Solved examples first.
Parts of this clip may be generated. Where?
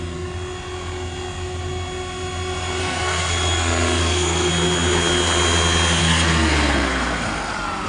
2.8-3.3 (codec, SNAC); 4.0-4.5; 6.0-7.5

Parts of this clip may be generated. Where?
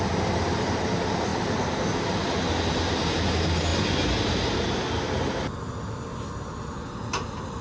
none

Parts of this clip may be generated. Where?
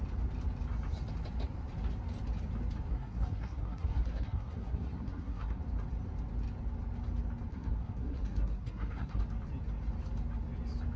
2.9-5.6 (codec, SNAC); 7.5-9.2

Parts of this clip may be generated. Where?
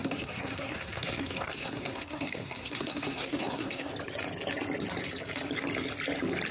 0.0-3.9 (codec, SNAC)